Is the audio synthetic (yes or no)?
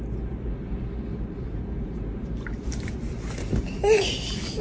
yes